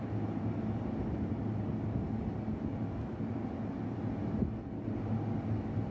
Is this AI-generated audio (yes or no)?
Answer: no